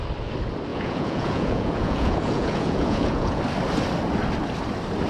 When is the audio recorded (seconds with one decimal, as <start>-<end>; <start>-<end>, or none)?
0.0-0.7; 3.4-5.1